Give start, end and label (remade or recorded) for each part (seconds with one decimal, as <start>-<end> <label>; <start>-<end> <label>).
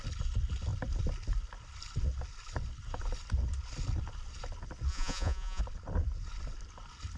0.0-4.9 recorded; 4.9-5.6 remade; 5.6-7.2 recorded